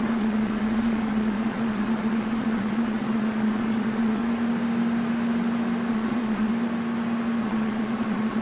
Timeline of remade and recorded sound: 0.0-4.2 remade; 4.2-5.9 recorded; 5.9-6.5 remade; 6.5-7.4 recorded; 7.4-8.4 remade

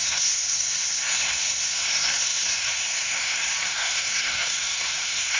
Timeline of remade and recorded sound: 0.0-5.4 remade

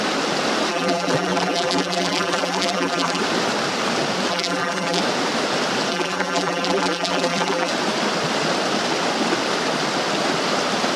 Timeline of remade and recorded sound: 0.0-0.7 recorded; 0.7-3.2 remade; 3.2-4.3 recorded; 4.3-5.0 remade; 5.0-5.9 recorded; 5.9-7.7 remade; 7.7-11.0 recorded

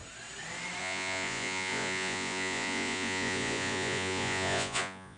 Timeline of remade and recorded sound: 0.0-0.8 recorded; 0.8-5.2 remade

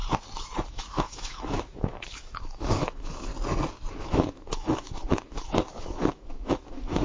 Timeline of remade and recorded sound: 0.0-0.7 recorded; 0.7-3.3 remade; 3.3-3.9 recorded; 3.9-7.0 remade

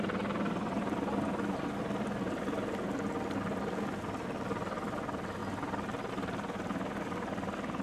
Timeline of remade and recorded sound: 0.0-7.8 recorded

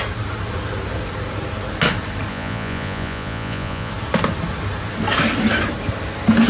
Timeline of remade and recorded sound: 0.0-2.3 recorded; 2.3-3.9 remade; 3.9-6.5 recorded